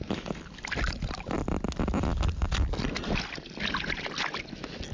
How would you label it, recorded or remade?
recorded